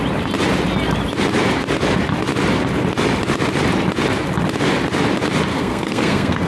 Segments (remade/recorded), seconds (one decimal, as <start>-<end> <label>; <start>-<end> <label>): 0.0-5.5 recorded; 5.5-6.5 remade